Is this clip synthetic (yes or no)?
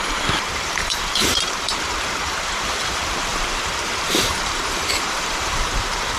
yes